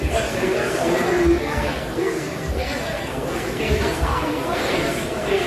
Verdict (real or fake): fake